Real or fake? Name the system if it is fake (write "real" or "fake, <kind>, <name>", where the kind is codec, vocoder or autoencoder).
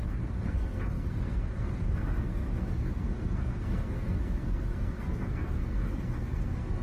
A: fake, codec, SNAC